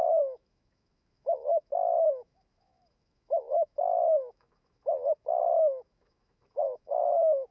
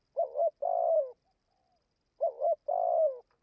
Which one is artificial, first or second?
first